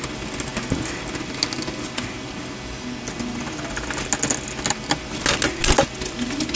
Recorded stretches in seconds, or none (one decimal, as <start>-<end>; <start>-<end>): 0.0-6.6